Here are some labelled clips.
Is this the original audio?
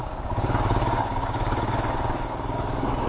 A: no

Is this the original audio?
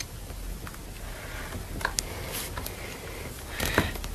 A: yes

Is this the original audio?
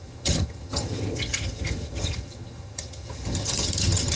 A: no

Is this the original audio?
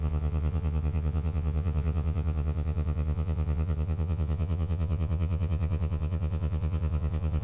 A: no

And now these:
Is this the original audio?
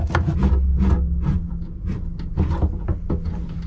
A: yes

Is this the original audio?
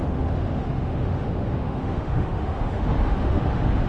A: no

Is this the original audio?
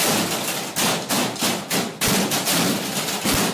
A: yes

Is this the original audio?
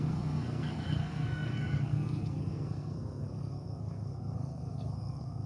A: no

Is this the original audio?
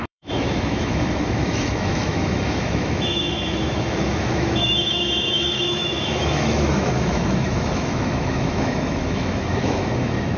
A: no